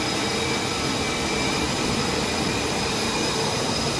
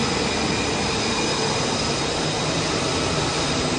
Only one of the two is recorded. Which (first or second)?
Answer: second